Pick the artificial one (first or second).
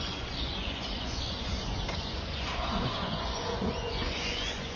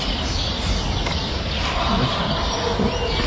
first